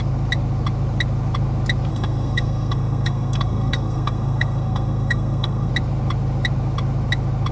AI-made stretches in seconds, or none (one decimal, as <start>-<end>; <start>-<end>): 1.9-5.7